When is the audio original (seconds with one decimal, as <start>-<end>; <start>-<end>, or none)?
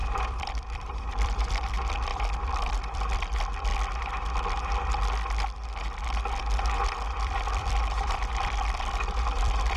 3.7-7.1